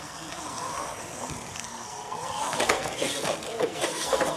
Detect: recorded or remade remade